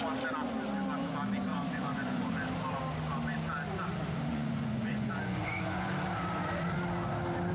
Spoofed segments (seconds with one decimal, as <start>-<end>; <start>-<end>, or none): 1.5-2.3; 4.3-5.9